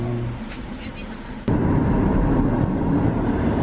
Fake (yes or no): no